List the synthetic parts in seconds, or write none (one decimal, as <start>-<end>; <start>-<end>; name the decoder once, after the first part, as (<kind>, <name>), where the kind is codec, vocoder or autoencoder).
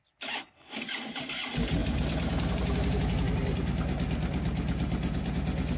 1.8-5.3 (vocoder, BigVGAN v2)